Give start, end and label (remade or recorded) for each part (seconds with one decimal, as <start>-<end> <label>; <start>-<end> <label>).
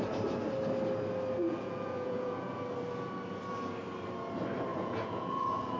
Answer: 0.0-1.4 recorded; 1.4-2.6 remade; 2.6-4.7 recorded; 4.7-5.8 remade